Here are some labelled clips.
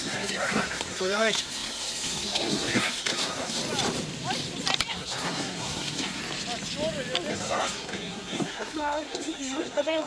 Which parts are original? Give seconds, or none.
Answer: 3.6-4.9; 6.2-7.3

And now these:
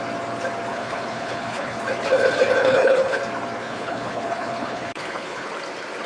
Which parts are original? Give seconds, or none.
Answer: 0.0-0.7; 1.8-2.6; 3.2-3.6; 5.5-6.1

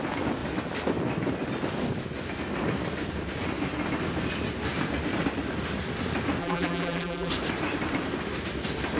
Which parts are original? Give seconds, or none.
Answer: 0.0-6.4; 7.3-9.0